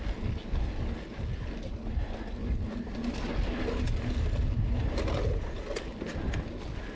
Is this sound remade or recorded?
recorded